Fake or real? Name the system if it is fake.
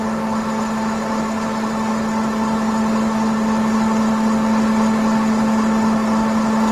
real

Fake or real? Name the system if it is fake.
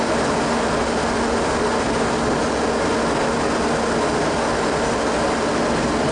real